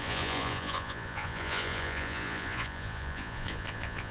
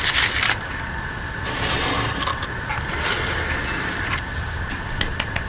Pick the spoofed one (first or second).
first